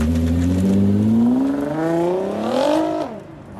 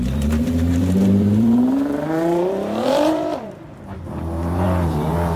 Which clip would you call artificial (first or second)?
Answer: second